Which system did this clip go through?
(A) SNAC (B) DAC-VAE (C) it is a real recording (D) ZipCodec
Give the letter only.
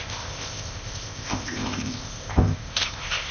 D